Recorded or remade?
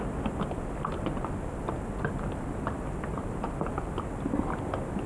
recorded